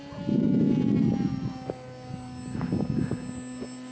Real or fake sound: real